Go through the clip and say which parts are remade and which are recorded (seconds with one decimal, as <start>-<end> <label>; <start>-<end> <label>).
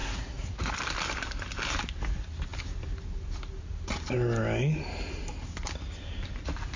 0.0-0.8 remade; 0.8-6.8 recorded